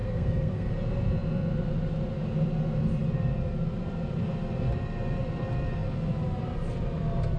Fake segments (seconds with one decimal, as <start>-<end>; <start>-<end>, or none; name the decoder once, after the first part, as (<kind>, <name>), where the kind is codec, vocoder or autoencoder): 0.0-0.7 (codec, SNAC)